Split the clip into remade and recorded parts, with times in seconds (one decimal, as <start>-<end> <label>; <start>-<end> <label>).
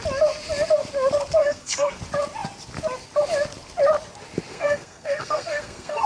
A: 0.0-1.4 recorded; 1.4-2.0 remade; 2.0-4.5 recorded; 4.5-6.1 remade